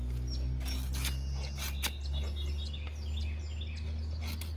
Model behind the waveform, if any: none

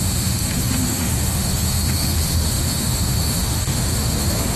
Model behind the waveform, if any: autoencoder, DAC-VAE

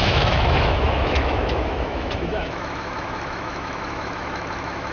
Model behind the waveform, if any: autoencoder, DAC-VAE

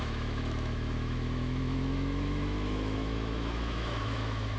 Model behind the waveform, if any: autoencoder, DAC-VAE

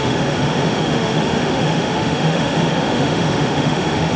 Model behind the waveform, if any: autoencoder, DAC-VAE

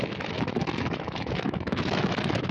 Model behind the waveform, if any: autoencoder, DAC-VAE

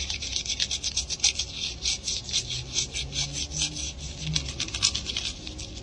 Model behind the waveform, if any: none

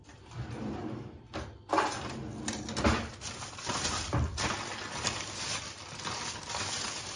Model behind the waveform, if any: none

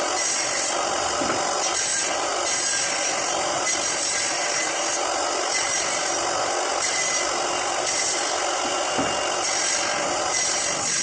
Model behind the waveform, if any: none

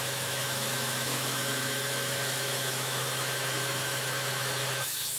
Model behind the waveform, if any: autoencoder, DAC-VAE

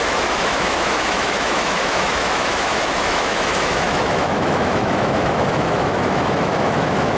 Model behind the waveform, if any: autoencoder, DAC-VAE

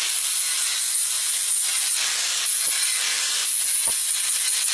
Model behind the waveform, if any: none